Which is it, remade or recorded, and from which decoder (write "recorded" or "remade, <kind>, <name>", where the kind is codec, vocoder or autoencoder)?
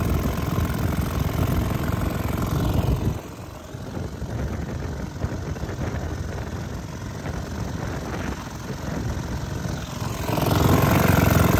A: recorded